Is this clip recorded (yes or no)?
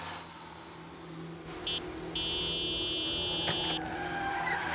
yes